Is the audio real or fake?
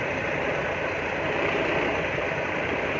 fake